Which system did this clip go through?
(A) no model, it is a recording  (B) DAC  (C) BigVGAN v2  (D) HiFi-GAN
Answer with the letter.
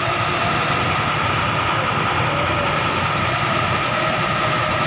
A